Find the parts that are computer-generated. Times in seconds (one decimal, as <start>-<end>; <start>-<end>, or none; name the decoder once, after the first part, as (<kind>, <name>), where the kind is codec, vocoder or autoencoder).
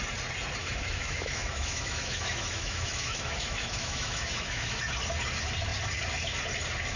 0.6-4.8 (autoencoder, DAC-VAE)